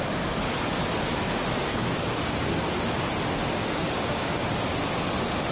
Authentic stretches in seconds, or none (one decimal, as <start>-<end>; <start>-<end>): 0.0-1.7; 2.5-3.6; 4.5-5.5